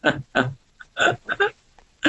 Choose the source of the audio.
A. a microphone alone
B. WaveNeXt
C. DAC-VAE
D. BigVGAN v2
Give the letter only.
B